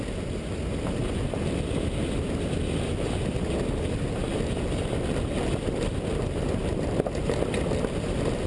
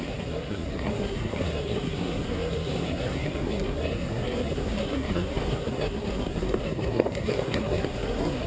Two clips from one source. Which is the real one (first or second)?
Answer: first